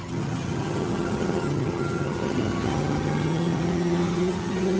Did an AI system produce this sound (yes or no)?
yes